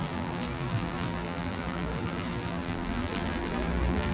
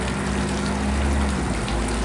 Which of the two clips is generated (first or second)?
first